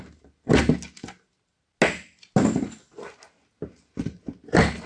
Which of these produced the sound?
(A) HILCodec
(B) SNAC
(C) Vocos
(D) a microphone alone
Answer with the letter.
D